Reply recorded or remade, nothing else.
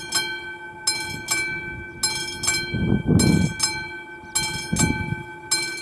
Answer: recorded